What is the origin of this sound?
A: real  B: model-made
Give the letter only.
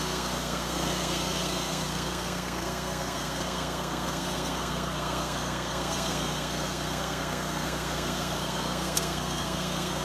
B